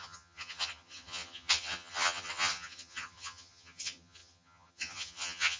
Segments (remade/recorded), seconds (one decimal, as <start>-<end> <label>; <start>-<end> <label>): 0.0-5.6 remade